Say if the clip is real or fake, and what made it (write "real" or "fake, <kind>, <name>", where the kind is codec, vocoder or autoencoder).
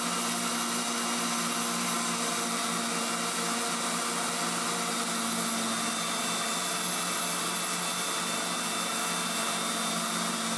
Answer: real